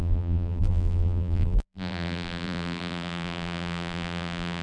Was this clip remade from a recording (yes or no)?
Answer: yes